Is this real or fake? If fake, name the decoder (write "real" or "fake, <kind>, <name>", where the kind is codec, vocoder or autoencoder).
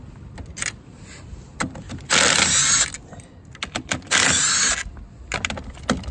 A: real